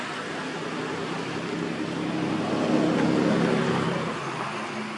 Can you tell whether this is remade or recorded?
recorded